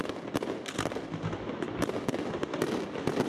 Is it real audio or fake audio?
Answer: real